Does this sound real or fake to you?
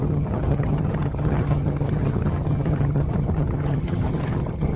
fake